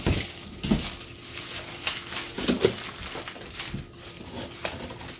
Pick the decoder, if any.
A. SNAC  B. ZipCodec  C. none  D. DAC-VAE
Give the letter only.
C